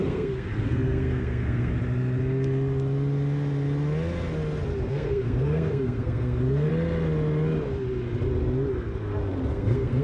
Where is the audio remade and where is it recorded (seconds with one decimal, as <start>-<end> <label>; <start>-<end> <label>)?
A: 0.0-1.7 remade; 1.7-4.9 recorded; 4.9-6.7 remade; 6.7-9.5 recorded; 9.5-10.0 remade